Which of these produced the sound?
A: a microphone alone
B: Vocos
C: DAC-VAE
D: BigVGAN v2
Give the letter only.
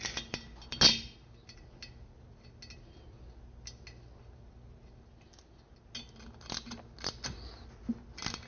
A